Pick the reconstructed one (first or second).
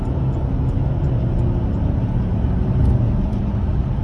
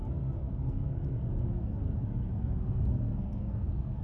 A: second